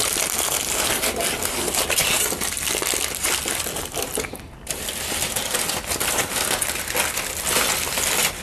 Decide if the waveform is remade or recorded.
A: recorded